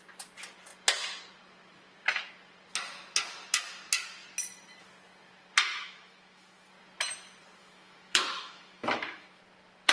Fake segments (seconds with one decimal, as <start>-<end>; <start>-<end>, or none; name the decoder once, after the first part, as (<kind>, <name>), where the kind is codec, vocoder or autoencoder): 5.7-6.7 (autoencoder, DAC-VAE); 7.6-9.4